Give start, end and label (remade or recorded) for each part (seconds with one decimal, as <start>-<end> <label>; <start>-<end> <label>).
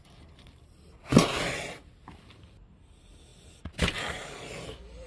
0.0-5.1 recorded